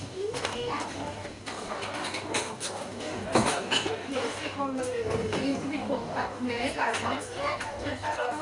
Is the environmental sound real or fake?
fake